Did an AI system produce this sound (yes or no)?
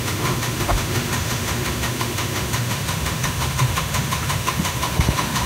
yes